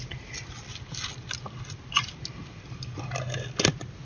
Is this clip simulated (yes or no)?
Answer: no